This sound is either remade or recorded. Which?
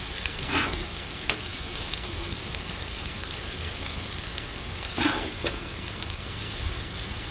remade